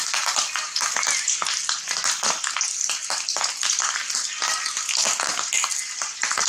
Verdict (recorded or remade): recorded